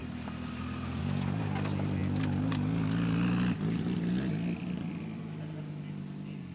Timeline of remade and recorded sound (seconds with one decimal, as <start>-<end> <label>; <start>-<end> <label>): 0.0-6.5 recorded